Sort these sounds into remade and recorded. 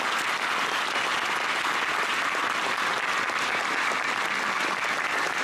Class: recorded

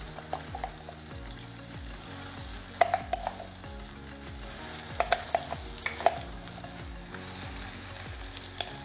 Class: recorded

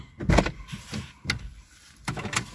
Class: recorded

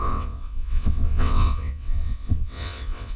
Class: remade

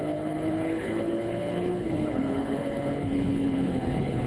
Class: remade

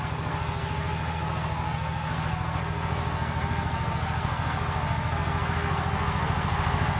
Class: remade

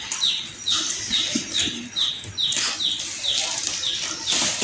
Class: recorded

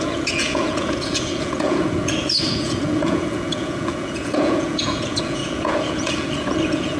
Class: remade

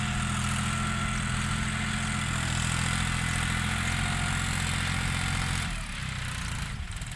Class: recorded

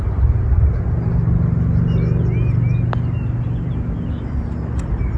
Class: recorded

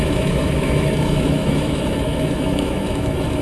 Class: remade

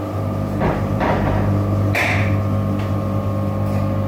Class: recorded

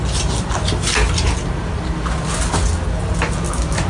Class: recorded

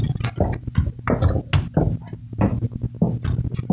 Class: recorded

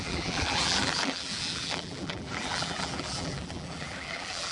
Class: remade